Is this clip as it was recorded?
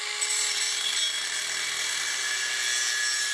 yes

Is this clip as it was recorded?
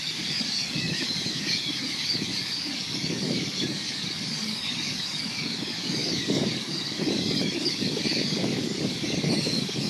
no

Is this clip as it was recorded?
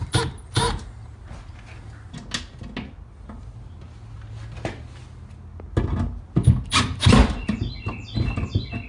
yes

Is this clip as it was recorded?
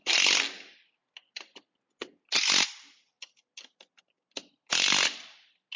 yes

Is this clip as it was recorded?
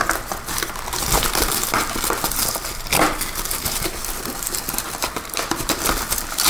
yes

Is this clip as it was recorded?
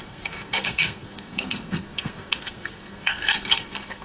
no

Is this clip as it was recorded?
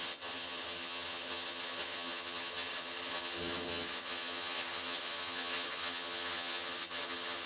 no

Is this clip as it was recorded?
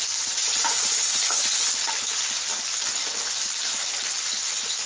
yes